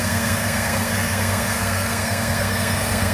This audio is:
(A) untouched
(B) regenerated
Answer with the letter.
B